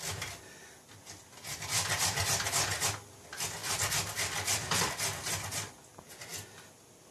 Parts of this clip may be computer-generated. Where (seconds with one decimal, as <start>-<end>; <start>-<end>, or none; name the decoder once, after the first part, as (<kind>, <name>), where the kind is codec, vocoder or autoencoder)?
none

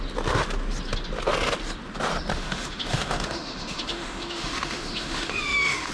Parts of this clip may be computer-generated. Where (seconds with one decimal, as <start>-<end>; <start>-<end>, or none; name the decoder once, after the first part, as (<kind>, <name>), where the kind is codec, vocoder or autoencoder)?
2.3-5.9 (autoencoder, DAC-VAE)